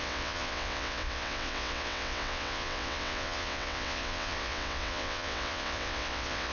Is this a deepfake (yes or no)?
yes